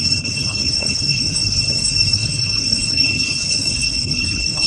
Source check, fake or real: fake